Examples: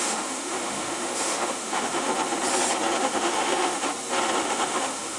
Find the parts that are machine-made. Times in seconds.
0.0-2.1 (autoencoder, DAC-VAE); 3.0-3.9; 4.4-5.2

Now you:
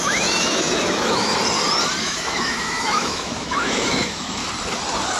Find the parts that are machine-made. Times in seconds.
0.0-1.3 (autoencoder, DAC-VAE); 2.0-4.4

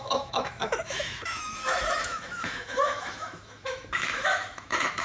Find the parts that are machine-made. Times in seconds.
0.0-5.0 (autoencoder, DAC-VAE)

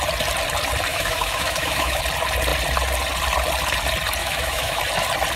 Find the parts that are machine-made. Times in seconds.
0.9-2.0 (autoencoder, DAC-VAE); 4.2-4.8

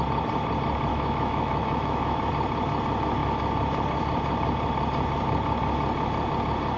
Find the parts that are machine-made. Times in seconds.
0.9-2.3 (autoencoder, DAC-VAE)

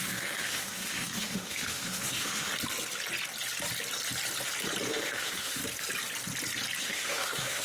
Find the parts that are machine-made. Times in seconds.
0.0-2.5 (autoencoder, DAC-VAE); 4.9-5.6; 6.8-7.6